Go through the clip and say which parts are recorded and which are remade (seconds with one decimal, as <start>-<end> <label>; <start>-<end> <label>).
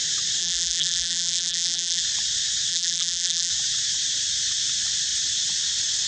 0.0-0.4 recorded; 0.4-2.0 remade; 2.0-2.7 recorded; 2.7-3.5 remade; 3.5-6.1 recorded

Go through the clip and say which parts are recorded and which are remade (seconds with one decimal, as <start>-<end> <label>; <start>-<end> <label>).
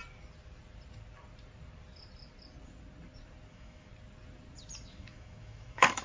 0.0-3.5 recorded; 3.5-3.9 remade; 3.9-4.9 recorded; 4.9-6.0 remade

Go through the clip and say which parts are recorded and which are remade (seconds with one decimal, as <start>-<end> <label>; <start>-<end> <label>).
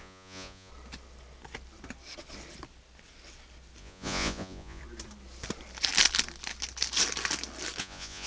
0.0-0.7 remade; 0.7-3.8 recorded; 3.8-4.8 remade; 4.8-7.8 recorded; 7.8-8.3 remade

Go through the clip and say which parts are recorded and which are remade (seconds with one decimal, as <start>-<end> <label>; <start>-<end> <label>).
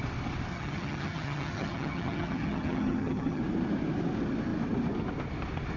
0.0-0.5 recorded; 0.5-3.4 remade; 3.4-5.8 recorded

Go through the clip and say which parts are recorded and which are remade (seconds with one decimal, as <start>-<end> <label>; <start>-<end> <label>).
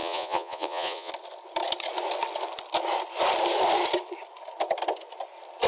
0.0-1.1 remade; 1.1-5.7 recorded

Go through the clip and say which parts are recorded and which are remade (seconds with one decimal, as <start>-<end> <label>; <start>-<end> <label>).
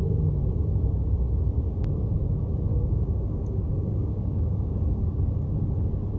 0.0-2.7 recorded; 2.7-5.1 remade; 5.1-6.2 recorded